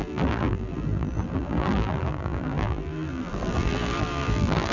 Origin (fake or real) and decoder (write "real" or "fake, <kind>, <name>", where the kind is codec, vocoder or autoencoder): fake, vocoder, BigVGAN v2